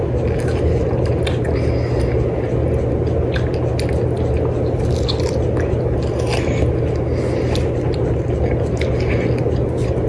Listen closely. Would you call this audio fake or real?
real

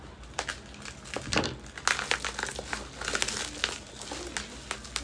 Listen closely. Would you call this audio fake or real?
real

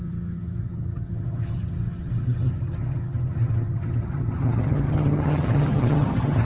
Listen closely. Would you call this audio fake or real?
fake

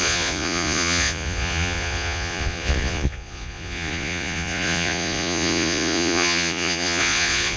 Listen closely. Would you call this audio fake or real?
fake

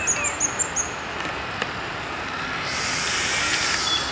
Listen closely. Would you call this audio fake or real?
real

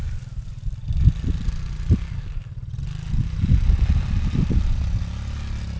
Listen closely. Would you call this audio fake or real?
real